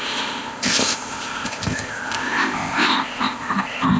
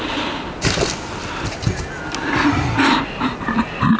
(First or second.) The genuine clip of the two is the second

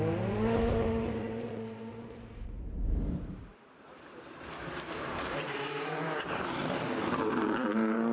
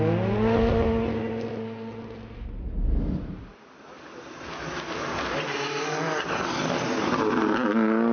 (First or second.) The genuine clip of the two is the second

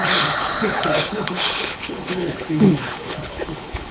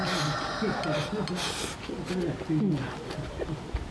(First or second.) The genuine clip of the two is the second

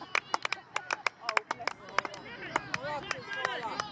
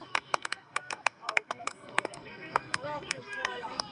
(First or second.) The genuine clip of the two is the first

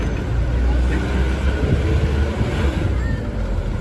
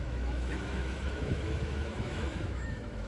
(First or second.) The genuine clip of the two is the first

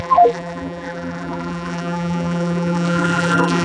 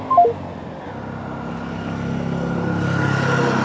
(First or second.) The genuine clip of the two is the second